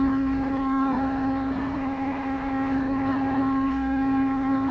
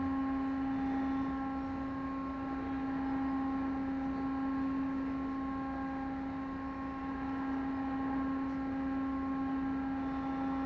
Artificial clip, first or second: first